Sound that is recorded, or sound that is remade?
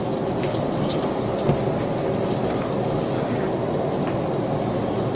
recorded